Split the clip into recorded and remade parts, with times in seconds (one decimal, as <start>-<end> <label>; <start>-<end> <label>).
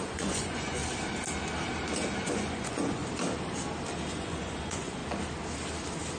0.0-0.8 remade; 0.8-2.2 recorded; 2.2-3.0 remade; 3.0-4.1 recorded; 4.1-5.0 remade; 5.0-6.2 recorded